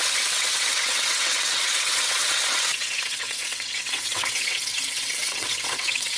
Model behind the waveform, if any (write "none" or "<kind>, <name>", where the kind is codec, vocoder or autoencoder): vocoder, WaveNeXt